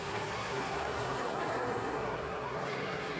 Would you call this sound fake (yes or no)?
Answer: yes